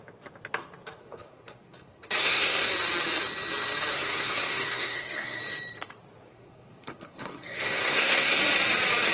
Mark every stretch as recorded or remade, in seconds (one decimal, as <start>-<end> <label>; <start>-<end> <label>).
0.0-1.0 recorded; 1.0-2.7 remade; 2.7-3.9 recorded; 3.9-5.4 remade; 5.4-6.3 recorded; 6.3-8.4 remade; 8.4-9.1 recorded